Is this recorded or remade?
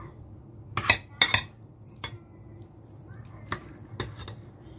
recorded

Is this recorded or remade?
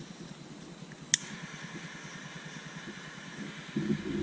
recorded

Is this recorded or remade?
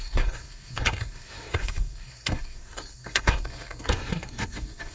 remade